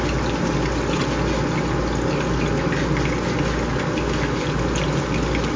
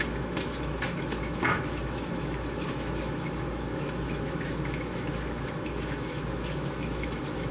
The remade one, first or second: second